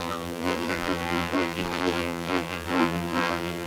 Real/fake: fake